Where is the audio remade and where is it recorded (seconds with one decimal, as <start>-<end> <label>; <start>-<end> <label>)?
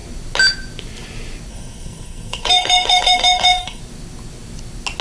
0.0-1.5 recorded; 1.5-3.8 remade; 3.8-5.0 recorded